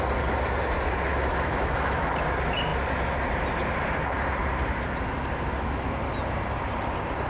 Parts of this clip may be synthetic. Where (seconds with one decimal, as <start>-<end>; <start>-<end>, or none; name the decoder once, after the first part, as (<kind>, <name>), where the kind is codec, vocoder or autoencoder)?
1.1-2.1 (autoencoder, DAC-VAE)